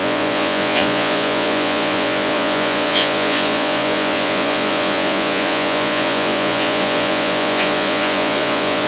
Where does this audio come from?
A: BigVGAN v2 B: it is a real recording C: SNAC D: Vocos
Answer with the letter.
D